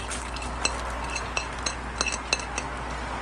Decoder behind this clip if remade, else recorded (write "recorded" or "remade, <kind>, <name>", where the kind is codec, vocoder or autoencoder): recorded